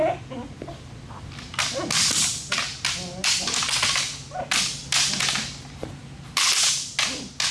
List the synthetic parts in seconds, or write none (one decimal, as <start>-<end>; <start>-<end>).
none